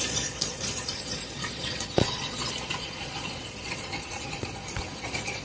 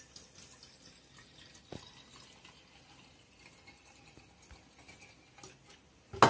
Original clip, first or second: second